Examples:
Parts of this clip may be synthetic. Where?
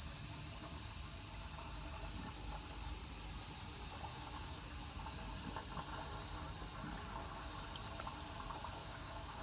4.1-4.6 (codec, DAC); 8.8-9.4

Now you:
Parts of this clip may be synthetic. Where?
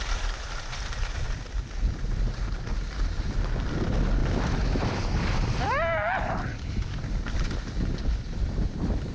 6.5-7.0 (codec, DAC)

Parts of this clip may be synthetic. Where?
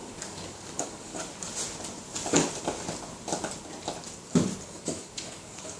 0.0-1.1 (codec, DAC); 4.6-5.8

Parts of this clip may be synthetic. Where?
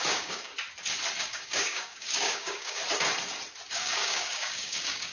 0.0-0.5 (codec, DAC); 1.2-2.8; 3.7-5.1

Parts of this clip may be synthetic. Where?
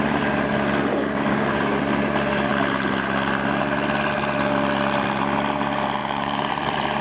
0.9-1.8 (codec, DAC); 6.0-6.5